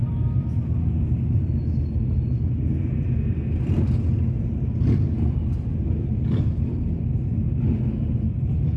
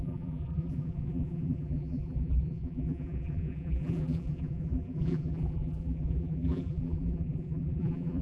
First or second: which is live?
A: first